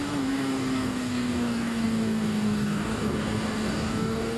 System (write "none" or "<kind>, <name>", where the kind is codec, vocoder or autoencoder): codec, DAC